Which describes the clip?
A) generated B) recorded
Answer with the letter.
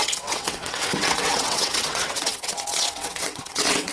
A